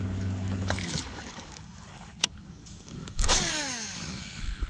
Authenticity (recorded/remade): remade